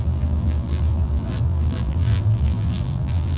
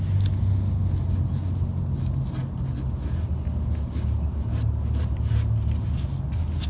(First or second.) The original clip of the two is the second